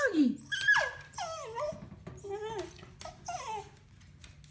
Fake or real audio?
real